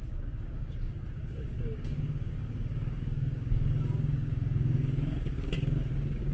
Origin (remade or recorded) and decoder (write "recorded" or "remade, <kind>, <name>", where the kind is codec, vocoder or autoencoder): remade, codec, DAC